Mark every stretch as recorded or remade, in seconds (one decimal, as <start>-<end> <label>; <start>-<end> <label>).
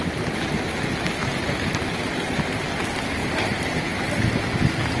0.0-1.2 recorded; 1.2-1.8 remade; 1.8-3.2 recorded; 3.2-4.3 remade; 4.3-5.0 recorded